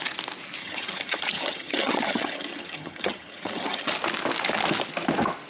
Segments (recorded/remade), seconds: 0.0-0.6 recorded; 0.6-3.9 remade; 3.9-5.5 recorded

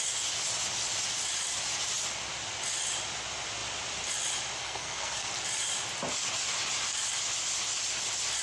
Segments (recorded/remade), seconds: 0.0-4.6 recorded; 4.6-5.3 remade; 5.3-8.4 recorded